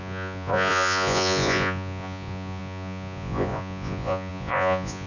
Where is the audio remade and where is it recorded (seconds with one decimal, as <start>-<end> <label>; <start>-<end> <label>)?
0.0-5.1 remade